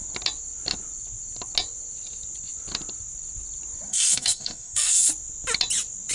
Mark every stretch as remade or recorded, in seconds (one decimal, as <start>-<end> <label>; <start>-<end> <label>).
0.0-3.9 recorded; 3.9-5.1 remade; 5.1-6.1 recorded